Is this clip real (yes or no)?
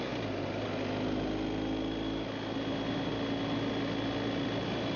yes